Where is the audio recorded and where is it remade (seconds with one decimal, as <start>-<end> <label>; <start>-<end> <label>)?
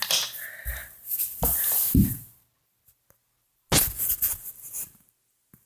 0.0-5.7 recorded